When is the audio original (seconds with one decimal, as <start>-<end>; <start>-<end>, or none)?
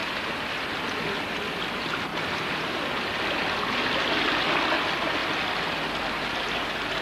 1.0-2.1; 3.1-7.0